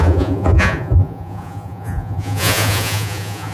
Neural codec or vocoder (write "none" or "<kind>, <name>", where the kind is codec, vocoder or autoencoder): vocoder, Vocos